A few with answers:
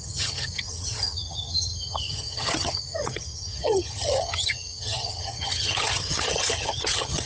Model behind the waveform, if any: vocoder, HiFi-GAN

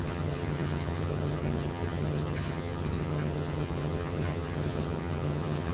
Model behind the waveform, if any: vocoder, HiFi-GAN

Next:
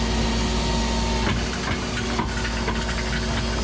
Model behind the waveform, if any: none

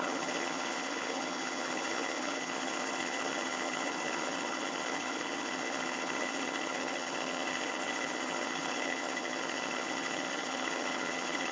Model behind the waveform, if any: vocoder, HiFi-GAN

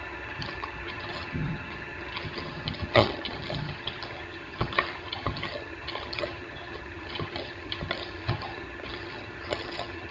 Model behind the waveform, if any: vocoder, HiFi-GAN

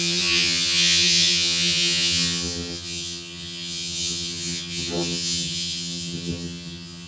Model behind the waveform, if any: vocoder, HiFi-GAN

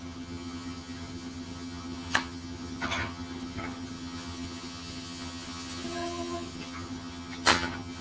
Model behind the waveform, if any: vocoder, HiFi-GAN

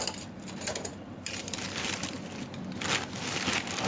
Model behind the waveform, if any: none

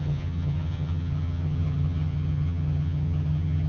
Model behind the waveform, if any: vocoder, HiFi-GAN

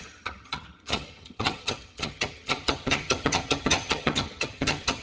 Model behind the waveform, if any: vocoder, HiFi-GAN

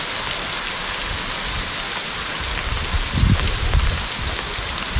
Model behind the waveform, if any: none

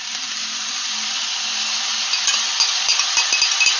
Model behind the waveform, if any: none